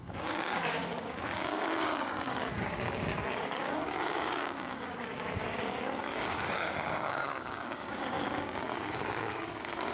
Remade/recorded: remade